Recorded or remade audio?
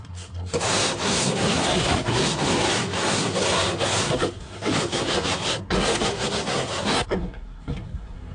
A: remade